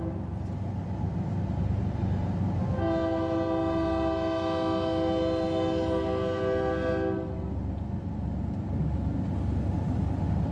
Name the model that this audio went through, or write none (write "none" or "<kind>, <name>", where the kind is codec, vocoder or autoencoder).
none